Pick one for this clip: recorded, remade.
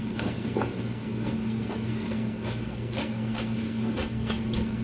remade